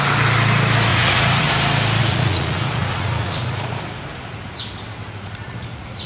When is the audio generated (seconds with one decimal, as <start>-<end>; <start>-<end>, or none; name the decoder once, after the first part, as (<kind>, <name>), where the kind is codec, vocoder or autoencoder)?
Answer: 0.9-1.5 (vocoder, Vocos); 2.0-3.8; 5.0-6.1